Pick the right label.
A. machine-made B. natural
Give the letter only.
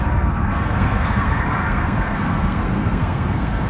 A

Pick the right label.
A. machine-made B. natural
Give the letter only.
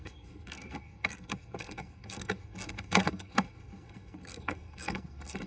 A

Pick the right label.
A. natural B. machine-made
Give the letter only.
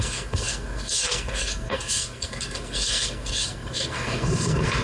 B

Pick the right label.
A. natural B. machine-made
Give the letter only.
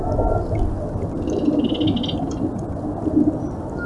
A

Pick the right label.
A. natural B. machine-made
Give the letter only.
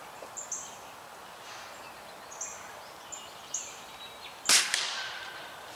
A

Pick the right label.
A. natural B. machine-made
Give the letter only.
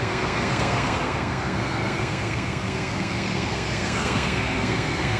B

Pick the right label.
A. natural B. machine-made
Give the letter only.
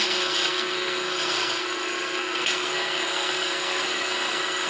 B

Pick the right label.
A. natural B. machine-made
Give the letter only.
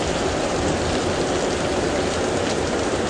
A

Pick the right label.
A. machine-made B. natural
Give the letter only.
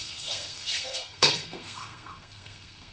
A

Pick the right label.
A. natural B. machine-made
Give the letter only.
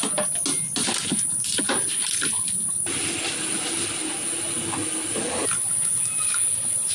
A